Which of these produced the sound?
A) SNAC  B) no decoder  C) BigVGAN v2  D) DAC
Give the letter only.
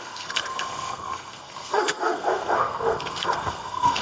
A